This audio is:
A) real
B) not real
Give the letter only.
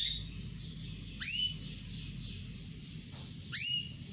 A